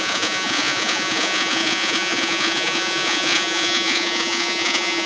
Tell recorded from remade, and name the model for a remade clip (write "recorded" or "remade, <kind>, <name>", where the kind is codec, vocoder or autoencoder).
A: remade, vocoder, Vocos